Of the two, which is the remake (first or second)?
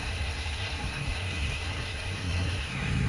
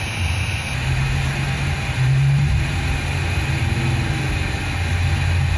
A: first